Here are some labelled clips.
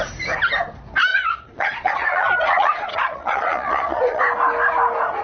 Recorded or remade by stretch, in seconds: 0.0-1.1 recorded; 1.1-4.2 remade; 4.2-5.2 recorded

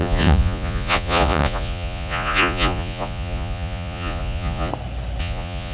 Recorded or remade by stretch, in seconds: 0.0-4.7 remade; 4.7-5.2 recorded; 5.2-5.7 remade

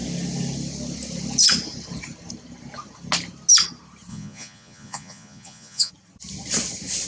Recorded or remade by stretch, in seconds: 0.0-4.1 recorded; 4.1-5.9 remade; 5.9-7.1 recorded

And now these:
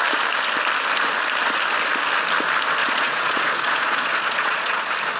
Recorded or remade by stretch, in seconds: 0.0-2.8 recorded; 2.8-4.8 remade; 4.8-5.2 recorded

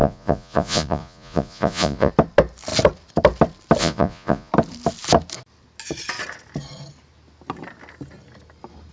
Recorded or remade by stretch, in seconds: 0.0-2.1 remade; 2.1-3.8 recorded; 3.8-4.5 remade; 4.5-8.9 recorded